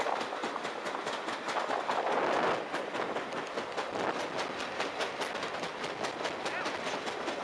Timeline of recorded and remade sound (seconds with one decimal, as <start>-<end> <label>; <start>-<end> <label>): 0.0-7.4 recorded